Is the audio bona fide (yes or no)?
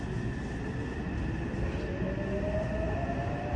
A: yes